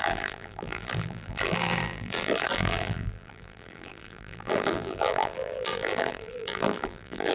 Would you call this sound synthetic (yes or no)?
yes